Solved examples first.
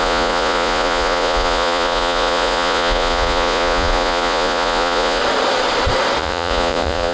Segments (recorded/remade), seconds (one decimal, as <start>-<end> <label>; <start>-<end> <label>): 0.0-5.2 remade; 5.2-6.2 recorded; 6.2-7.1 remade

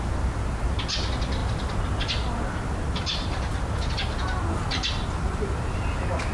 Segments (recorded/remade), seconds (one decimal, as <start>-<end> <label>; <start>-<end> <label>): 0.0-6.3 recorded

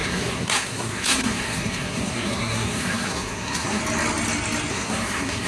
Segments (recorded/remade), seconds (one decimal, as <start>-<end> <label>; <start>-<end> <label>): 0.0-3.8 remade; 3.8-4.7 recorded; 4.7-5.5 remade

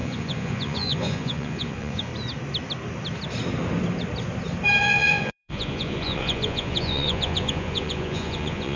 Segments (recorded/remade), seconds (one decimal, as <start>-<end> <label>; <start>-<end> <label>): 0.0-2.1 remade; 2.1-4.8 recorded; 4.8-8.8 remade